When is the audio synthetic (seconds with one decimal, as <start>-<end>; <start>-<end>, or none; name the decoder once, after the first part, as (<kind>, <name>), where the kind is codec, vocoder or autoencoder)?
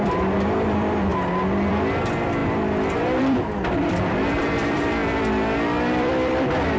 0.0-1.1 (vocoder, BigVGAN v2); 1.7-5.0; 6.0-6.8